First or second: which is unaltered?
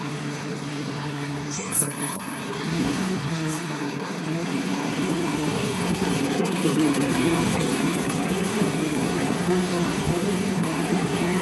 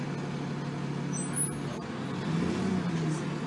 second